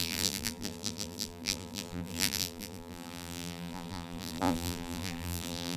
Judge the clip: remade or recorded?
remade